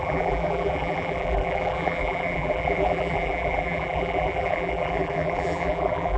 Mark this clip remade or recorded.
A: remade